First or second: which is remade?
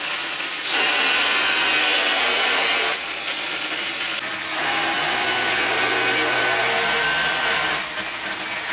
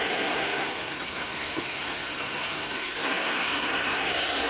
second